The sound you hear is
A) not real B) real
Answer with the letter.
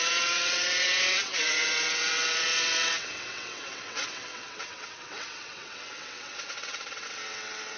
A